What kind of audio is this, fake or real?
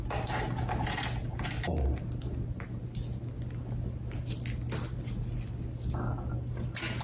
real